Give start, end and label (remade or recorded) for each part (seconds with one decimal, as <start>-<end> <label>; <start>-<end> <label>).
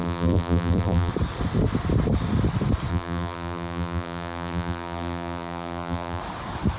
0.0-1.1 remade; 1.1-2.9 recorded; 2.9-6.2 remade; 6.2-6.8 recorded